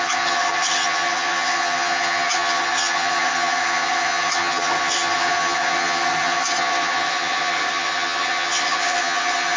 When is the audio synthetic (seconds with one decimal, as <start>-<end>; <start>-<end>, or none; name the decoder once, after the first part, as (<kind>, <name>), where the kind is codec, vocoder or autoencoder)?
0.0-9.6 (vocoder, HiFi-GAN)

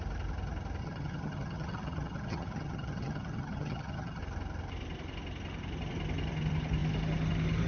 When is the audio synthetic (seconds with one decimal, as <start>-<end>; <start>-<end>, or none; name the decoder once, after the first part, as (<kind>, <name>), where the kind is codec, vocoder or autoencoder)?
0.8-4.2 (vocoder, HiFi-GAN)

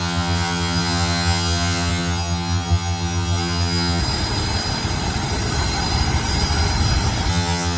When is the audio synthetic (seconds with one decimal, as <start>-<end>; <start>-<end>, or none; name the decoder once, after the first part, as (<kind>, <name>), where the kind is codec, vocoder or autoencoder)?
0.0-4.0 (vocoder, HiFi-GAN); 7.3-7.8

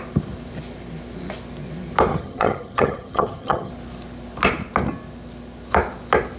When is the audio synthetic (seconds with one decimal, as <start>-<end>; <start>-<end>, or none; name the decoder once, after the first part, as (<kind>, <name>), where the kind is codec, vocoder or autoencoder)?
2.1-3.7 (vocoder, HiFi-GAN)

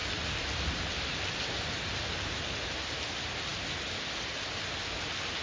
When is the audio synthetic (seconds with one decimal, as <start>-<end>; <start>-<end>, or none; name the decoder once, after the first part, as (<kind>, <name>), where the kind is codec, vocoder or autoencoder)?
none

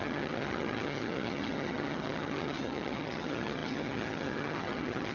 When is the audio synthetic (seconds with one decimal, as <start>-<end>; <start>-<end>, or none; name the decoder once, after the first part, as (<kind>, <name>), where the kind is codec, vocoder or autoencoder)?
0.0-5.1 (vocoder, HiFi-GAN)